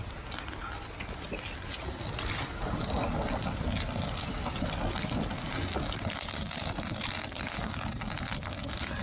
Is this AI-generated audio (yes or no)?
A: no